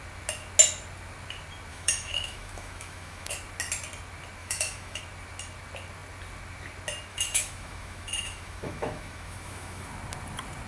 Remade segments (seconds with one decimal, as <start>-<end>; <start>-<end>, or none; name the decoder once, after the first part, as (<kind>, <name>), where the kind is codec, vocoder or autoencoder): 1.7-3.3 (autoencoder, DAC-VAE); 4.4-5.0; 7.1-9.9